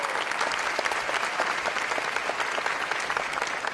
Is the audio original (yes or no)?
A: yes